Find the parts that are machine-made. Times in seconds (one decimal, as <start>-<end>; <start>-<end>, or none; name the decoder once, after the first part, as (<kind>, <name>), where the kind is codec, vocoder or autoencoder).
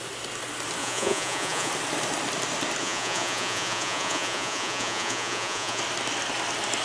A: 0.8-1.7 (vocoder, Vocos); 2.8-5.8